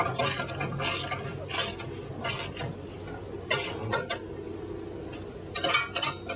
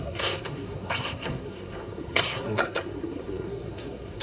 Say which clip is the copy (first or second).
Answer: second